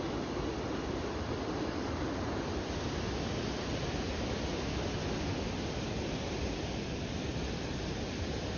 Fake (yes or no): no